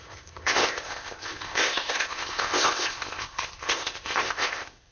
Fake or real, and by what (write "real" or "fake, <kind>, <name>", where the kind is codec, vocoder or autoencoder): fake, codec, ZipCodec